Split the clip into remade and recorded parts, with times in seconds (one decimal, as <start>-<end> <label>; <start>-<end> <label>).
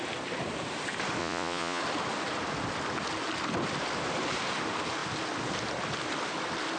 0.0-1.2 recorded; 1.2-1.8 remade; 1.8-6.8 recorded